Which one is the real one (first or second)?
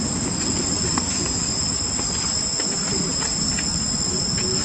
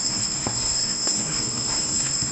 first